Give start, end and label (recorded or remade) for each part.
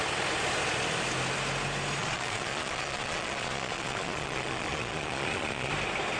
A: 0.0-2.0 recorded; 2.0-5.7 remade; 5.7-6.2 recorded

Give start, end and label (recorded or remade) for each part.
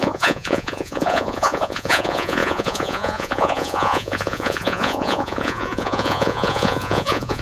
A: 0.0-7.4 remade